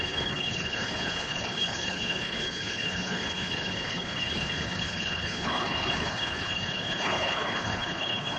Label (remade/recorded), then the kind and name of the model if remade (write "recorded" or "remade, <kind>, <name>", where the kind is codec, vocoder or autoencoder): remade, codec, HILCodec